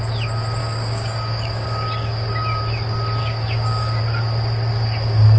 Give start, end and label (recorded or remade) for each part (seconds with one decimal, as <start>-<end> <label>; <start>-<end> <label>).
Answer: 0.0-0.6 recorded; 0.6-2.6 remade; 2.6-3.2 recorded; 3.2-4.0 remade; 4.0-4.7 recorded; 4.7-5.4 remade